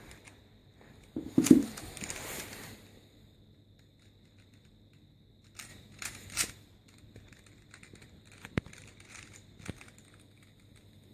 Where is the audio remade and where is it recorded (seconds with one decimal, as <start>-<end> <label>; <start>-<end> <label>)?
0.0-0.6 recorded; 0.6-2.1 remade; 2.1-5.7 recorded; 5.7-6.4 remade; 6.4-8.4 recorded; 8.4-9.6 remade; 9.6-11.1 recorded